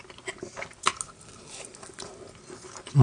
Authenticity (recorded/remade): recorded